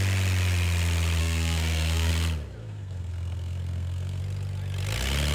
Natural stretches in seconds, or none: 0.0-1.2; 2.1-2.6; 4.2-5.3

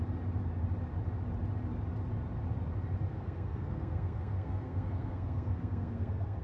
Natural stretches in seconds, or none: 0.0-3.1

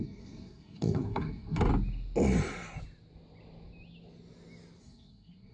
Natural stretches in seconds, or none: 1.7-4.8

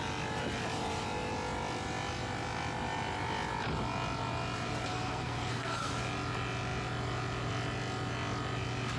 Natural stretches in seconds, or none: 0.0-4.9; 5.9-9.0